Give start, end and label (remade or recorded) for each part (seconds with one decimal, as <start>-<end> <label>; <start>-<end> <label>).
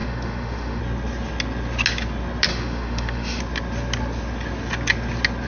0.0-0.8 remade; 0.8-2.5 recorded; 2.5-3.4 remade; 3.4-5.5 recorded